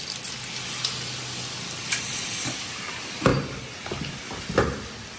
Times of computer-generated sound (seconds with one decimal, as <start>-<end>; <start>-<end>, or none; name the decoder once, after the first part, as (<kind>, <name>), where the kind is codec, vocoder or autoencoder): none